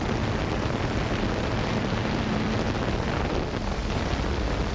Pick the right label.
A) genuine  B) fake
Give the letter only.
A